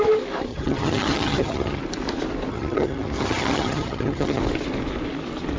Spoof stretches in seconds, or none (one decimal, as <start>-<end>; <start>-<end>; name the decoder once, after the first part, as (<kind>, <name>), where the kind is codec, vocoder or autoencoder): 0.5-1.8 (vocoder, HiFi-GAN); 2.5-4.4

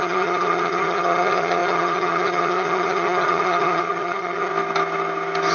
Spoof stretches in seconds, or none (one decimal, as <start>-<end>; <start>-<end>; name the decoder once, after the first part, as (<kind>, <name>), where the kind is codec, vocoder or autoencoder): 0.0-4.5 (vocoder, HiFi-GAN)

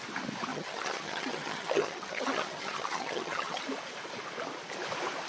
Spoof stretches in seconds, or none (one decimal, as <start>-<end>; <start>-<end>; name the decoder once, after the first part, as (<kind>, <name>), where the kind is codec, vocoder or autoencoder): 0.5-3.6 (vocoder, HiFi-GAN)